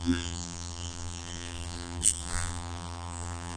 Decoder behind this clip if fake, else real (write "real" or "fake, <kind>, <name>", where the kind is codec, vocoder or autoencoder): fake, vocoder, BigVGAN v2